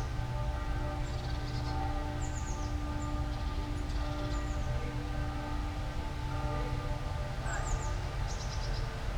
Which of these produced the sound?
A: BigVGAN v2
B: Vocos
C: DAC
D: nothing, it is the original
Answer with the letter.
D